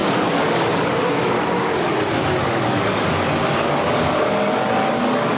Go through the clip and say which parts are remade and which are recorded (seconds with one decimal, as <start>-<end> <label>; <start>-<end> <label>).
0.0-5.4 remade